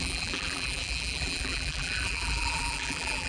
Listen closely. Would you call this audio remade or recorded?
remade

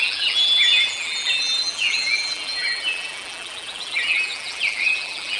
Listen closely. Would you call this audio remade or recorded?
remade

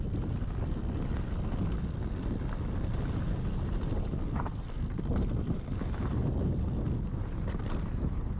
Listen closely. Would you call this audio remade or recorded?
recorded